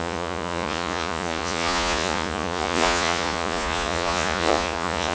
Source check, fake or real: fake